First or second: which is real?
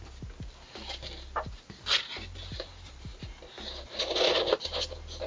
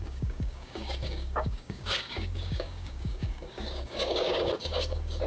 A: first